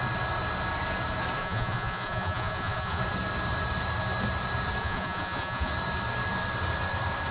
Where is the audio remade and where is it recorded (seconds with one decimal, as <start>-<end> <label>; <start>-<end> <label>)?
0.0-1.4 recorded; 1.4-3.0 remade; 3.0-4.8 recorded; 4.8-5.7 remade; 5.7-7.3 recorded